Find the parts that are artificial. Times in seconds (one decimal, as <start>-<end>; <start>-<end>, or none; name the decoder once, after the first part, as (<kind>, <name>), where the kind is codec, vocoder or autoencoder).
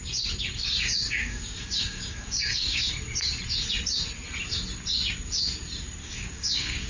0.6-2.9 (codec, DAC); 6.0-6.9